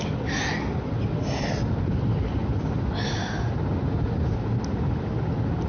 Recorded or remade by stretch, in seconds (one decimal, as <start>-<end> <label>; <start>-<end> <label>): 0.0-5.7 recorded